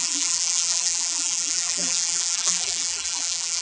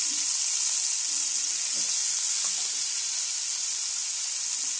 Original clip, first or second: second